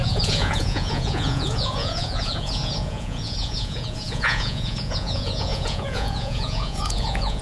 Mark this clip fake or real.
fake